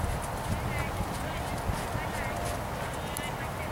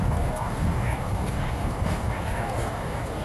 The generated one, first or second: second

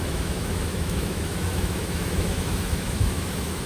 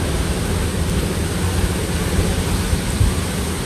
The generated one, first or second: first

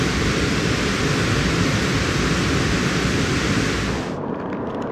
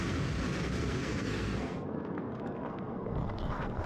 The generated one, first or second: second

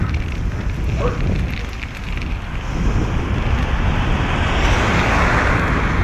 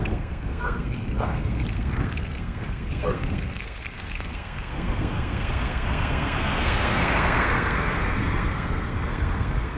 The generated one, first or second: second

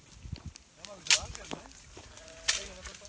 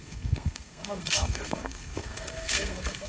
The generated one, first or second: second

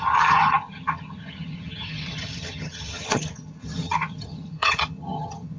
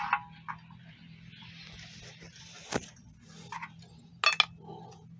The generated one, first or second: first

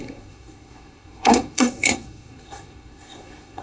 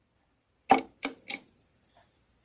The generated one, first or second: first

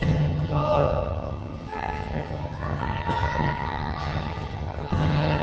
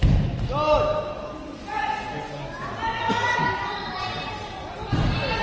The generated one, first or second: first